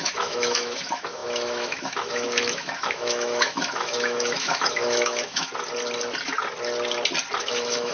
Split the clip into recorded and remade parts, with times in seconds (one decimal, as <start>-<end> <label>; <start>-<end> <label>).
0.0-5.5 remade; 5.5-7.4 recorded; 7.4-7.9 remade